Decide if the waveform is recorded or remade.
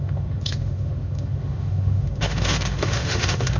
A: remade